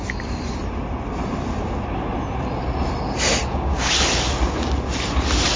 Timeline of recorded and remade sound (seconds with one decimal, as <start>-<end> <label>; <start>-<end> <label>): 0.0-3.4 recorded; 3.4-3.9 remade; 3.9-5.6 recorded